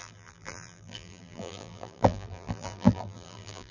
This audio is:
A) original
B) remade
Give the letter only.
B